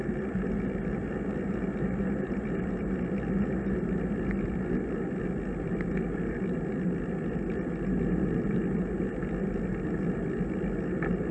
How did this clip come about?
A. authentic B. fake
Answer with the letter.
A